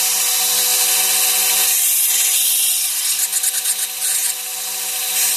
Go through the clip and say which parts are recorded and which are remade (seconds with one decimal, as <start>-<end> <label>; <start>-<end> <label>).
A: 0.0-5.4 recorded